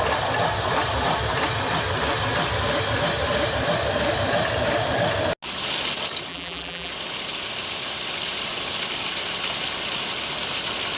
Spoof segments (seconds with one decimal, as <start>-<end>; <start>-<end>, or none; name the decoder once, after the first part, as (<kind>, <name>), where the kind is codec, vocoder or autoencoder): 6.3-6.9 (vocoder, BigVGAN v2)